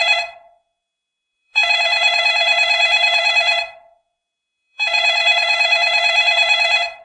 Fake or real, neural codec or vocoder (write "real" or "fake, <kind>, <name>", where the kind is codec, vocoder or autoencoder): fake, vocoder, Vocos